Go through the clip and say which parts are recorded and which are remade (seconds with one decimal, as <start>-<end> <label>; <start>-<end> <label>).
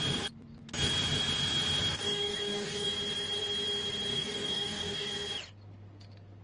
0.0-1.9 recorded; 1.9-2.9 remade; 2.9-4.1 recorded; 4.1-5.1 remade; 5.1-6.4 recorded